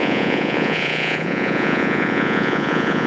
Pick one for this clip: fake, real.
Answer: fake